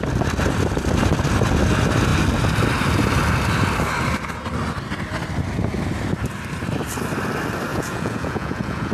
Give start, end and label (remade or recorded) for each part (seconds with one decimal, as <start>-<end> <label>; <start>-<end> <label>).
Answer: 0.0-7.7 recorded; 7.7-8.9 remade